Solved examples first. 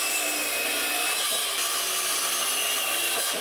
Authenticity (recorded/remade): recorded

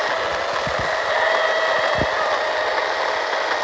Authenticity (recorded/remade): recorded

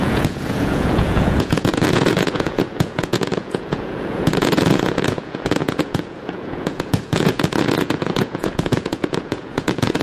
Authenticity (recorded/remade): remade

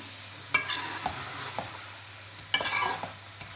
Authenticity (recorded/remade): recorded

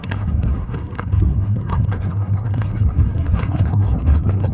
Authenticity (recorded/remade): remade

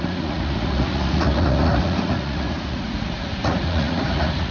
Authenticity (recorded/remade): remade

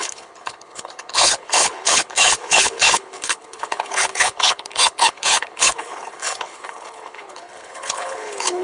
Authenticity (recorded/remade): remade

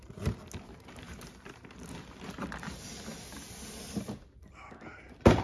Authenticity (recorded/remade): recorded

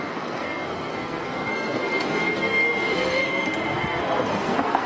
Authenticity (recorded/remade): remade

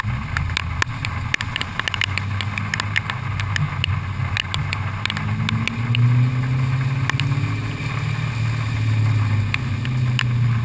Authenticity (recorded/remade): recorded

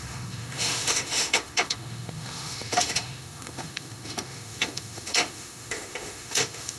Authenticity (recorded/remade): remade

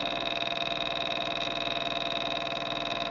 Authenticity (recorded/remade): recorded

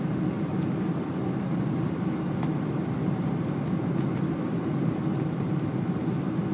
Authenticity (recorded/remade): recorded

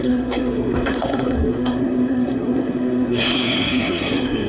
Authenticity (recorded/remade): remade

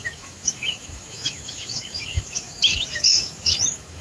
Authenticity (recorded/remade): remade